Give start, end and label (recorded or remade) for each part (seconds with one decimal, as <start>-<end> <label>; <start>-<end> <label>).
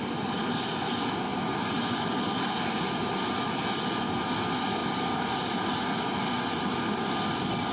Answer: 0.0-1.3 recorded; 1.3-3.6 remade; 3.6-7.7 recorded